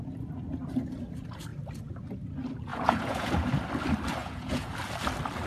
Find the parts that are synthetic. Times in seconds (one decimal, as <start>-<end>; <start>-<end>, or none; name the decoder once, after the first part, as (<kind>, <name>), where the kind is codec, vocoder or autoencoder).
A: 2.7-3.3 (vocoder, Vocos); 4.2-4.7